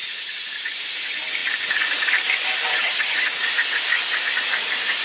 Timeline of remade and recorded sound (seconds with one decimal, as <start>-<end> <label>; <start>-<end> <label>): 0.0-2.7 recorded; 2.7-3.3 remade; 3.3-5.0 recorded